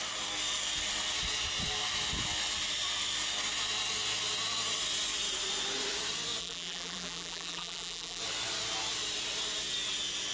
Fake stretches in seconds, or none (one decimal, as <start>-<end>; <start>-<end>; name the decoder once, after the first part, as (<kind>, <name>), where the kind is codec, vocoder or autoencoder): 6.4-8.2 (vocoder, BigVGAN v2)